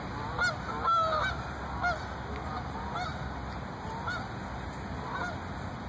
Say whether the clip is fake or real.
real